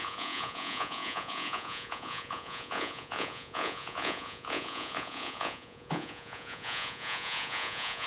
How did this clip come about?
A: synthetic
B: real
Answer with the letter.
A